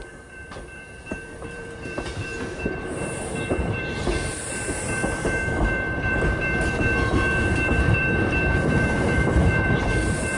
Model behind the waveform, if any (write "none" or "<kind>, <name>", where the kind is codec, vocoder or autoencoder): vocoder, BigVGAN v2